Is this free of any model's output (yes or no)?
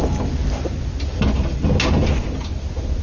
yes